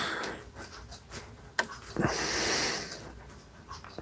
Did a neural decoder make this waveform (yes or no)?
no